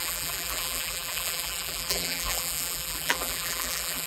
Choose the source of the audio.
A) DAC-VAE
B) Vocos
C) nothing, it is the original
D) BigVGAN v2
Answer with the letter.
D